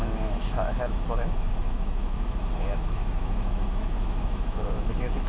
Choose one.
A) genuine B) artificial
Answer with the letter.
B